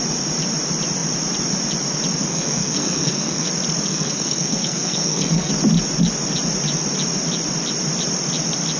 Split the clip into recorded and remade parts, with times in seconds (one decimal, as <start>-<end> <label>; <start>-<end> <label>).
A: 0.0-2.3 recorded; 2.3-3.5 remade; 3.5-3.9 recorded; 3.9-5.5 remade; 5.5-8.8 recorded